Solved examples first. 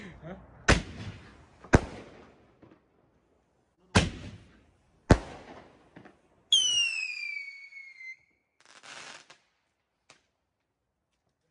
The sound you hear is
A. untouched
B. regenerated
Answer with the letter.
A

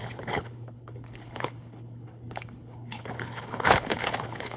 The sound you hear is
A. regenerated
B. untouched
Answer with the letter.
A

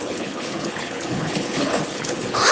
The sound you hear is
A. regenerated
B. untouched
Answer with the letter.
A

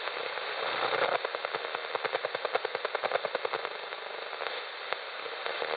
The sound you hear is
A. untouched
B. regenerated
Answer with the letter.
A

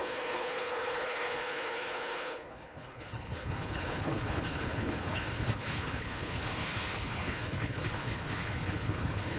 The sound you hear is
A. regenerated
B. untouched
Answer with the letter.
A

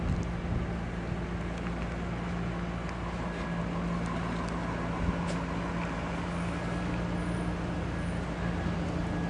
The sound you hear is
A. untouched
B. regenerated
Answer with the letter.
A